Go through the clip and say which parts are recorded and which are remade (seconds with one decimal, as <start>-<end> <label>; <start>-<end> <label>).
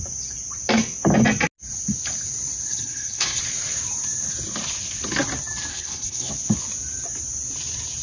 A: 0.0-2.7 recorded; 2.7-3.4 remade; 3.4-5.7 recorded; 5.7-6.3 remade; 6.3-8.0 recorded